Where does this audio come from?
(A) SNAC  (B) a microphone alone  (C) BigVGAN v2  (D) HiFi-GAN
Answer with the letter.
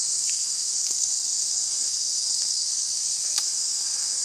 A